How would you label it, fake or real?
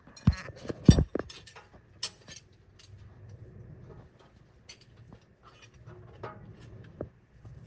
real